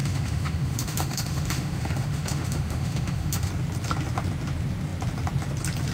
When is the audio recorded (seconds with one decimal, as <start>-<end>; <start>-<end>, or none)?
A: 3.5-5.9